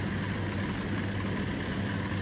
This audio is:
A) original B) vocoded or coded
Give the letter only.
A